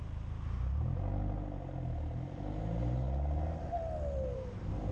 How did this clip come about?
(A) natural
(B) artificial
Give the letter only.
A